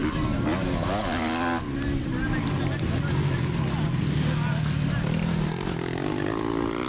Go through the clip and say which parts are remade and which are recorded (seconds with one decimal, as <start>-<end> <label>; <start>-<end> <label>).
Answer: 0.0-6.9 recorded